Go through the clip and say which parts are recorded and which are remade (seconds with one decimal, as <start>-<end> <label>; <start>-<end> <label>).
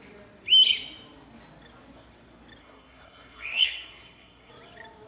0.0-2.6 recorded; 2.6-4.5 remade; 4.5-5.1 recorded